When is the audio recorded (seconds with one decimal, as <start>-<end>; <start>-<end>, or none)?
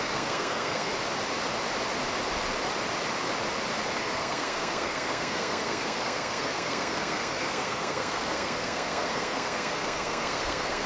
0.9-4.0